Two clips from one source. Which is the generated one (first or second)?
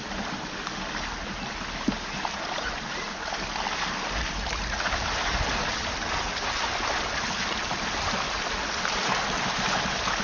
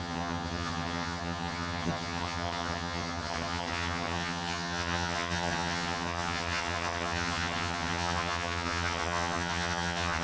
second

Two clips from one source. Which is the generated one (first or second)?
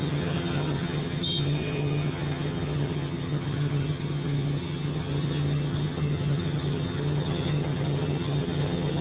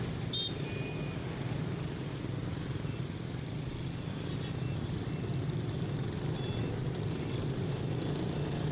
first